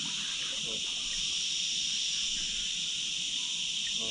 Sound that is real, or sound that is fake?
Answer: real